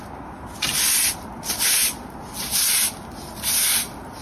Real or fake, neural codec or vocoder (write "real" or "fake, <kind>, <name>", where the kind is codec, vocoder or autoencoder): real